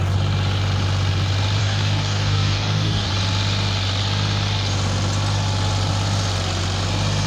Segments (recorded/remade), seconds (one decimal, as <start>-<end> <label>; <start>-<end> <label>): 0.0-1.6 recorded; 1.6-3.1 remade; 3.1-7.3 recorded